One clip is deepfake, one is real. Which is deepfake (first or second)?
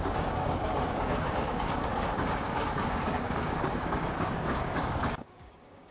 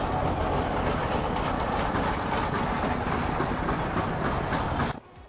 first